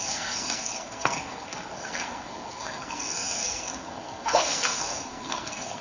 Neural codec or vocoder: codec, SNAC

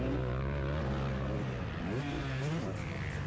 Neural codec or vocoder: none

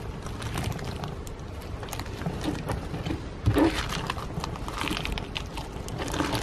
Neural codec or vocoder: none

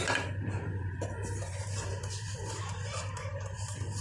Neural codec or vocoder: vocoder, BigVGAN v2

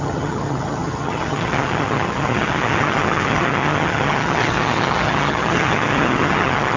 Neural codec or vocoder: vocoder, HiFi-GAN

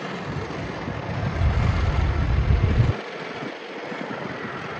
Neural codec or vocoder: none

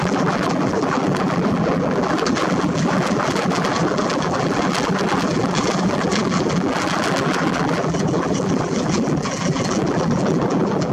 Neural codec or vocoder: vocoder, BigVGAN v2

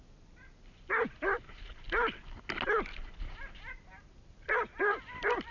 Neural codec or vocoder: none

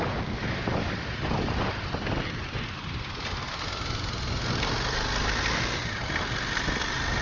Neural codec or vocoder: none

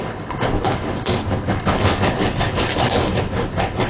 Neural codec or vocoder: codec, HILCodec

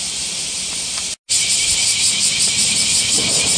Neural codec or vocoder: none